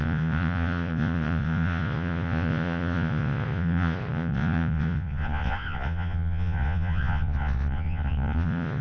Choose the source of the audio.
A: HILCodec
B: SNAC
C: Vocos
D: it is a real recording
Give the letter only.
C